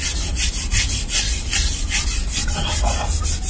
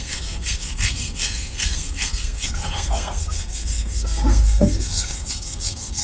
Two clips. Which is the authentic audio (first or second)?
first